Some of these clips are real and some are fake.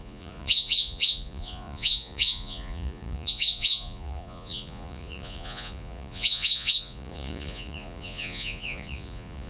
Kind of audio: fake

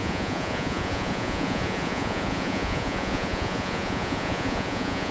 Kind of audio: fake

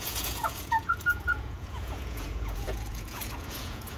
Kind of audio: fake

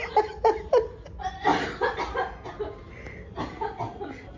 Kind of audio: real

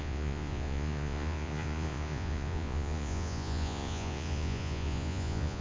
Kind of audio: fake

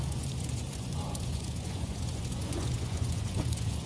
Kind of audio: fake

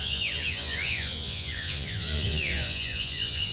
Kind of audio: fake